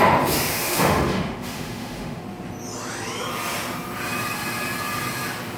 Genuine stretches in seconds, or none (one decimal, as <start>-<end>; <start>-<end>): 0.0-0.5; 2.2-5.6